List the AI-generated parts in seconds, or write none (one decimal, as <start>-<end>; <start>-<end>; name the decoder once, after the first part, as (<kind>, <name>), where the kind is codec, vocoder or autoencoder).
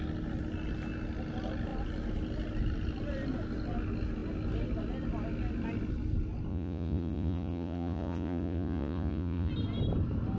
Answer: 6.5-9.5 (vocoder, Vocos)